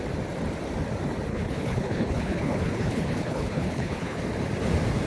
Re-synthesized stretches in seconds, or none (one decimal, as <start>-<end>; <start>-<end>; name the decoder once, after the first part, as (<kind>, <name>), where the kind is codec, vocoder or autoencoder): 1.3-4.2 (codec, HILCodec)